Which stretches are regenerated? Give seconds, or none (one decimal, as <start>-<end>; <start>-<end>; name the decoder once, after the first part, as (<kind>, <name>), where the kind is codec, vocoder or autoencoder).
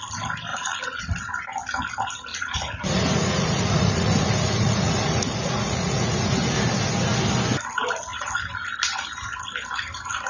0.5-1.0 (vocoder, Vocos); 2.3-6.3